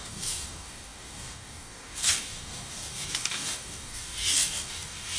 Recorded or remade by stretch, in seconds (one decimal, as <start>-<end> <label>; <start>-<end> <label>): 0.0-5.2 remade